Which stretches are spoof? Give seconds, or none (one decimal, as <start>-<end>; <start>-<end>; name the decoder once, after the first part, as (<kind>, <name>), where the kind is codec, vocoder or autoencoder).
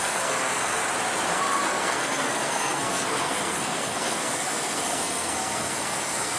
0.0-0.8 (codec, SNAC); 1.3-6.4